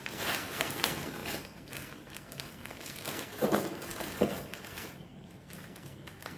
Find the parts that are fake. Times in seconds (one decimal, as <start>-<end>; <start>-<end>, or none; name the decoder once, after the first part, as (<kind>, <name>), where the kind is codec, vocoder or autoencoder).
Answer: 0.0-6.4 (codec, SNAC)